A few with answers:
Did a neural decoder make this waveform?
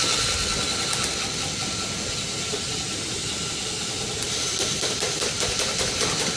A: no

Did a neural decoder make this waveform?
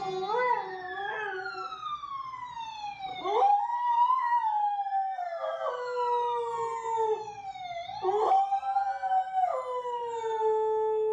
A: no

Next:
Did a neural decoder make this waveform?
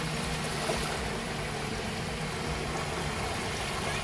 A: no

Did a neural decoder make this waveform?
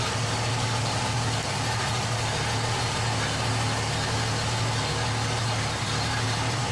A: no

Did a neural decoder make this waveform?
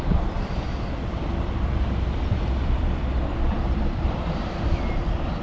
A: yes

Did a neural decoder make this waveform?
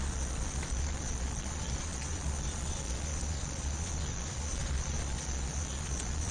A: yes